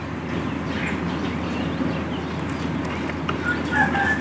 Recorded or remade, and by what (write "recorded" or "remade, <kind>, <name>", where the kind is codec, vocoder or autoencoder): recorded